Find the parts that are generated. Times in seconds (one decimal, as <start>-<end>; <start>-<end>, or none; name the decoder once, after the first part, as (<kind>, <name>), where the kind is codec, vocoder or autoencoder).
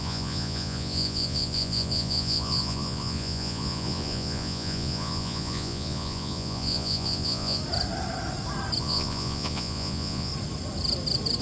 0.0-7.6 (vocoder, Vocos); 8.8-10.3